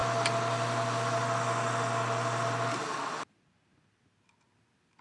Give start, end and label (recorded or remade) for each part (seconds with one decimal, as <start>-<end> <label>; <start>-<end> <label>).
0.0-5.0 recorded